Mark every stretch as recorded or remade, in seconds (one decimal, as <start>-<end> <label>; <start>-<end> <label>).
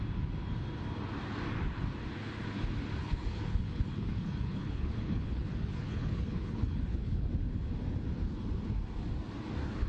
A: 0.0-3.0 recorded; 3.0-7.3 remade; 7.3-9.9 recorded